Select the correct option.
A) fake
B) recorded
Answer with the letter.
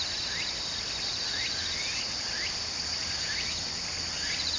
B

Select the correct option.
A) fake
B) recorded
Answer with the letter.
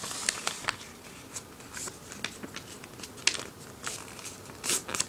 B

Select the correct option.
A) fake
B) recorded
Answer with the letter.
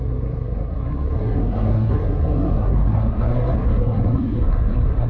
A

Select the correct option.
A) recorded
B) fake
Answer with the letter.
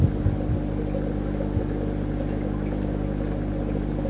A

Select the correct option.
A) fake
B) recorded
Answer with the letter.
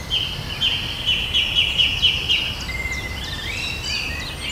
B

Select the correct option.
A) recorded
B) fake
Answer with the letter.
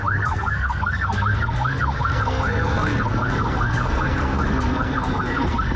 B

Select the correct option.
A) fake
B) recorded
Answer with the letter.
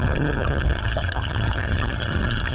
A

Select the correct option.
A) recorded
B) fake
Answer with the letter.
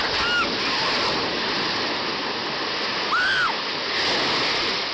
A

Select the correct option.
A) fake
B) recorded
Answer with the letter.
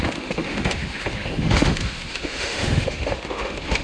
A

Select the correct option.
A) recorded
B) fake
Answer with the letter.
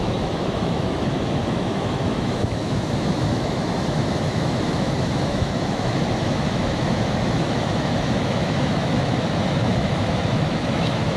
B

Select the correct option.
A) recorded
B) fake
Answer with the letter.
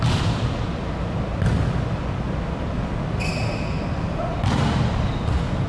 A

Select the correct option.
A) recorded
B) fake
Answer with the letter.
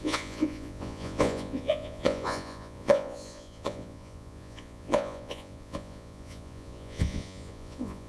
B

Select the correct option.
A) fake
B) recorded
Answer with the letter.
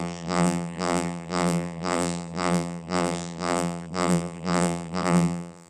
A